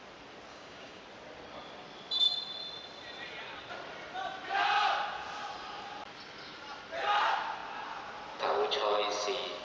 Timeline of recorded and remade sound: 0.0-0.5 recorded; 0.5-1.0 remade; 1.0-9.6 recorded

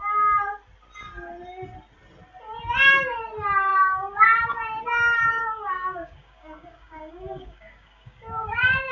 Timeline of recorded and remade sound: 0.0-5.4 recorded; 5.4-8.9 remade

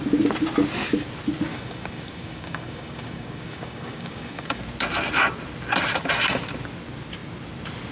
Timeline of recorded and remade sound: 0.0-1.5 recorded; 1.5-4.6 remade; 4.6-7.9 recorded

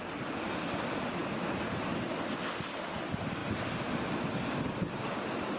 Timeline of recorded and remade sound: 0.0-5.6 recorded